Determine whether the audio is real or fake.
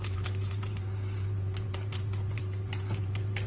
fake